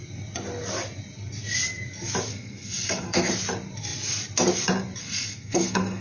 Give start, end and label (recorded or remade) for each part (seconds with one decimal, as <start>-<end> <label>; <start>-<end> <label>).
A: 0.0-2.3 recorded; 2.3-3.3 remade; 3.3-5.0 recorded; 5.0-6.0 remade